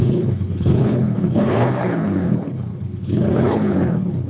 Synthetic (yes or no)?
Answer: yes